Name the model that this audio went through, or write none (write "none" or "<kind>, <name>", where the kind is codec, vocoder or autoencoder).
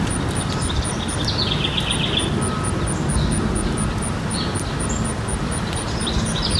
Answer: none